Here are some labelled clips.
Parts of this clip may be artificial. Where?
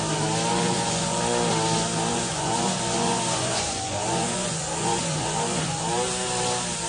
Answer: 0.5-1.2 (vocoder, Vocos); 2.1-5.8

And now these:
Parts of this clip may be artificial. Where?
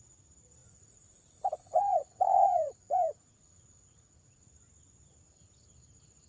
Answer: 0.6-4.4 (vocoder, Vocos)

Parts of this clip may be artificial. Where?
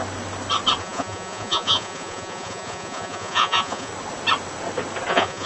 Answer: 0.8-3.9 (vocoder, Vocos); 5.1-5.5